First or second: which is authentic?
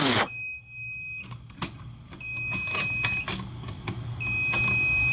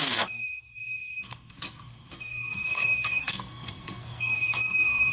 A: first